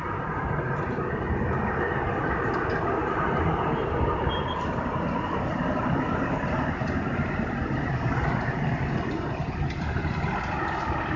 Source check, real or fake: real